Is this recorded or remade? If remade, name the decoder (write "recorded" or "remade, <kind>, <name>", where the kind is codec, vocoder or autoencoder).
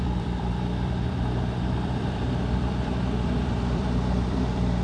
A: remade, vocoder, BigVGAN v2